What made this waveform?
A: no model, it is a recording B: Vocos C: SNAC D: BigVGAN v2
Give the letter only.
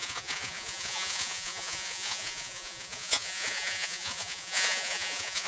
B